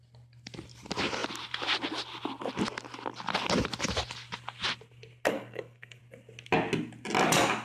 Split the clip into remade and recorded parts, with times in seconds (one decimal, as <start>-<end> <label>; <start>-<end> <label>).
0.0-5.3 recorded; 5.3-6.0 remade; 6.0-7.6 recorded